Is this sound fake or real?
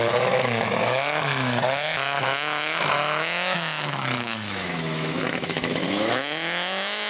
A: fake